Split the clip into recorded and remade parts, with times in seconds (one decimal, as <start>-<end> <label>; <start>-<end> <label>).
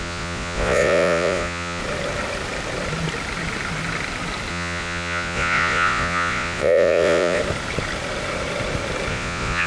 0.0-1.8 remade; 1.8-4.5 recorded; 4.5-7.4 remade; 7.4-9.1 recorded; 9.1-9.7 remade